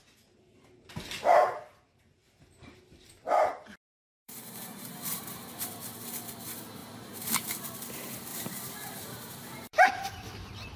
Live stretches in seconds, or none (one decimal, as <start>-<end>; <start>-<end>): 0.0-2.2; 5.7-6.8; 7.6-8.3; 9.9-10.8